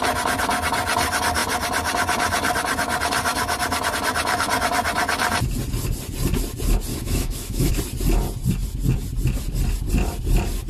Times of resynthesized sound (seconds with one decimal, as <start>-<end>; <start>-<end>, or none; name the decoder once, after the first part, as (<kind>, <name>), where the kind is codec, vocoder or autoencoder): 6.9-7.7 (autoencoder, DAC-VAE)